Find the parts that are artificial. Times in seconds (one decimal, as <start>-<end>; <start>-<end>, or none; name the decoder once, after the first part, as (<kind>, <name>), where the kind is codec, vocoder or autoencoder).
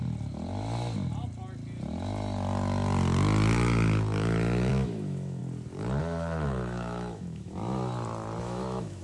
4.7-5.4 (autoencoder, DAC-VAE); 6.0-7.6; 8.4-9.0